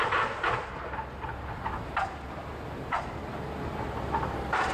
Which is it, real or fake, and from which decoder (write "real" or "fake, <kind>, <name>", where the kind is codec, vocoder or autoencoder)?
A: real